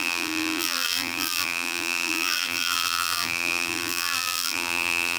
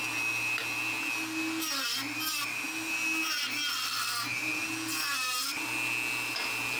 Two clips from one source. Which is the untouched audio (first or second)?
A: second